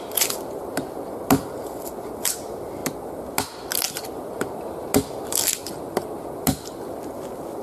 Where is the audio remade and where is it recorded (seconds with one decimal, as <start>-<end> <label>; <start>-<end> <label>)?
0.0-7.6 recorded